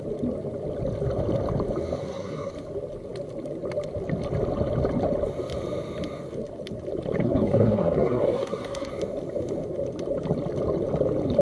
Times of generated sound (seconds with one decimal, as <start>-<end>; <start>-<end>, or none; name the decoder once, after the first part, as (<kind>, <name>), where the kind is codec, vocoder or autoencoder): 2.0-2.5 (codec, SNAC); 7.2-8.9